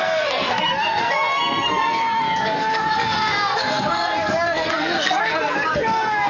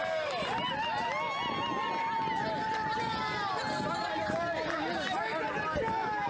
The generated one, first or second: first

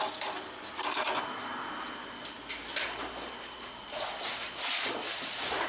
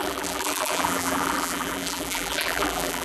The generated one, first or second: second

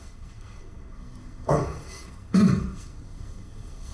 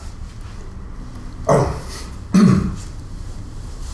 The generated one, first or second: first